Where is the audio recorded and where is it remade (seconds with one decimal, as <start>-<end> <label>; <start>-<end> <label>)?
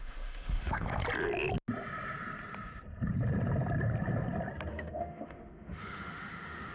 0.0-1.0 remade; 1.0-4.7 recorded; 4.7-6.7 remade